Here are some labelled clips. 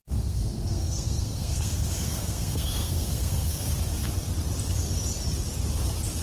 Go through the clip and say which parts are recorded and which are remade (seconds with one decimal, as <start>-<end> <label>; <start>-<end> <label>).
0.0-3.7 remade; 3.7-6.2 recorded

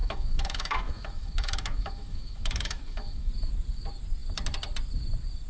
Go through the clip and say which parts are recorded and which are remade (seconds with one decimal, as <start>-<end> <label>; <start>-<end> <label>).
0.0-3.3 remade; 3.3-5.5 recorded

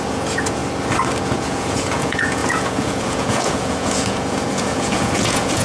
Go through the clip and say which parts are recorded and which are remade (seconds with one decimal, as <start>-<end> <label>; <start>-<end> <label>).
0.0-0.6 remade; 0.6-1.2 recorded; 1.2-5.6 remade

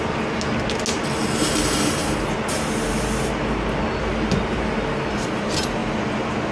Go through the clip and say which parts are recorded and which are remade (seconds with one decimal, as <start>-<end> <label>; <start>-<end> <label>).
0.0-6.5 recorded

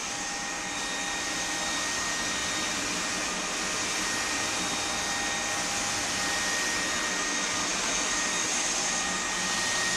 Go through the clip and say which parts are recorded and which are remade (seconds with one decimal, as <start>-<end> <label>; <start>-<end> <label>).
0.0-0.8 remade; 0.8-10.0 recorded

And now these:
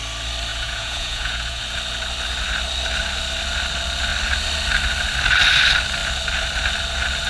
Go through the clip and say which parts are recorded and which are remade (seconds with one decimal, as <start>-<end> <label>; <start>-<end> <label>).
0.0-0.5 recorded; 0.5-1.6 remade; 1.6-7.3 recorded